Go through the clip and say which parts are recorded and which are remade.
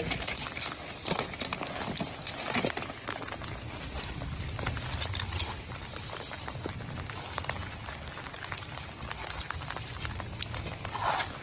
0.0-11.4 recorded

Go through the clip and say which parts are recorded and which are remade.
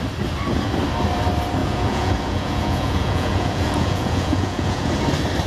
0.0-1.6 recorded; 1.6-4.9 remade; 4.9-5.5 recorded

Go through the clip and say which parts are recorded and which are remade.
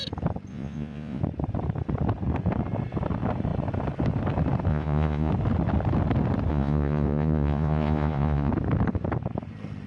0.0-0.5 recorded; 0.5-1.2 remade; 1.2-4.7 recorded; 4.7-5.3 remade; 5.3-6.5 recorded; 6.5-8.5 remade; 8.5-9.9 recorded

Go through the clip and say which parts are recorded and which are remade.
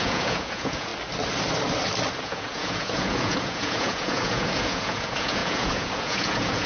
0.0-0.9 remade; 0.9-2.2 recorded; 2.2-6.7 remade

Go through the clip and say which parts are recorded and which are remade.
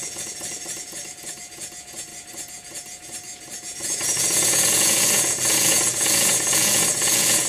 0.0-7.5 remade